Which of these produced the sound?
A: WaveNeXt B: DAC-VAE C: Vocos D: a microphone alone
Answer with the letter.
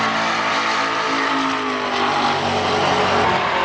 D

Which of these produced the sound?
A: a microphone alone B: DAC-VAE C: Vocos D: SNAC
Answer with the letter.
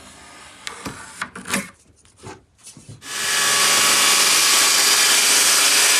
A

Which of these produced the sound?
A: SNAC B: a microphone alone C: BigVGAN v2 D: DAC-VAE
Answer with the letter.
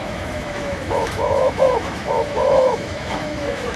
D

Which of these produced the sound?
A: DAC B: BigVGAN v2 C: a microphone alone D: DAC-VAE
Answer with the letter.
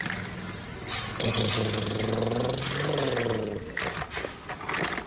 C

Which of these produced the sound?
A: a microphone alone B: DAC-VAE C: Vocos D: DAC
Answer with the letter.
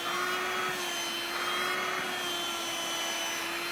A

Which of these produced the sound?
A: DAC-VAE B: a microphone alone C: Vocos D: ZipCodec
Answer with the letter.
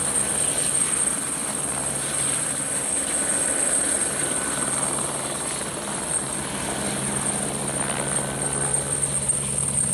B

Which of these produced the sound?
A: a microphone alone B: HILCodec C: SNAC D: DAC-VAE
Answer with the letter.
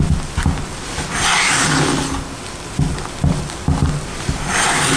A